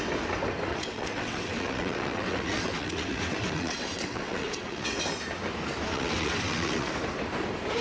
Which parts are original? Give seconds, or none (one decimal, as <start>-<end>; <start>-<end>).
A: 0.0-0.7; 5.0-5.9; 6.9-7.8